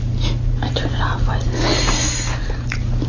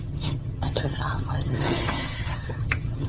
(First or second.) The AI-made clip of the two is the second